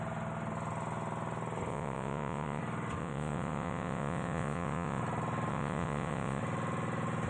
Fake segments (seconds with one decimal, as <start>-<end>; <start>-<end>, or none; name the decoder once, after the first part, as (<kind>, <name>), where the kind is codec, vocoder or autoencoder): 1.7-2.6 (vocoder, WaveNeXt); 3.0-5.0; 5.5-6.4